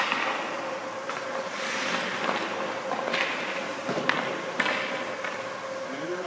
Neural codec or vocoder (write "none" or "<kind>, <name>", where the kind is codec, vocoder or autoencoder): none